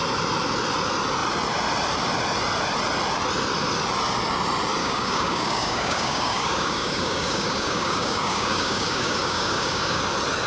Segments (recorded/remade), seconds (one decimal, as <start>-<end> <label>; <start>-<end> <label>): 0.0-4.8 recorded; 4.8-10.0 remade; 10.0-10.5 recorded